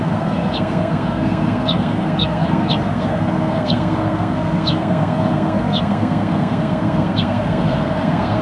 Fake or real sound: fake